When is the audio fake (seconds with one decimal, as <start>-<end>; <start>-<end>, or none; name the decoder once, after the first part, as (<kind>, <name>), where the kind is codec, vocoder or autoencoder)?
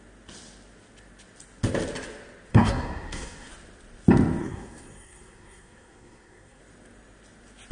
2.5-3.5 (codec, SNAC); 4.4-6.6